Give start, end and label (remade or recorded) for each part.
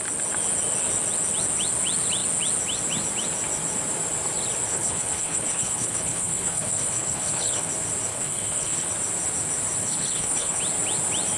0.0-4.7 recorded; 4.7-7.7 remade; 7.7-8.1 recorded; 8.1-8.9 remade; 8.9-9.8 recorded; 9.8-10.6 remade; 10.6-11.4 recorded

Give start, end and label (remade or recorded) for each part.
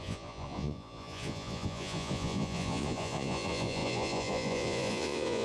0.0-5.4 remade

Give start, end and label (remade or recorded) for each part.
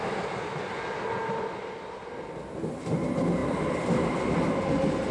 0.0-5.1 recorded